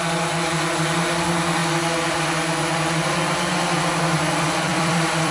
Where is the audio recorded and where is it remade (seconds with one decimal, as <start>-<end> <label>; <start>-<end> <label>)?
0.0-4.7 recorded; 4.7-5.3 remade